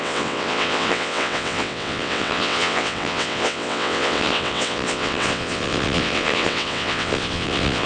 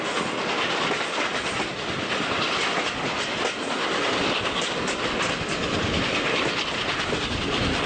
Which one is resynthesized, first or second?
first